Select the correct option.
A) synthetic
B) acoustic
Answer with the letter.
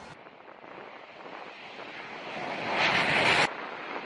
B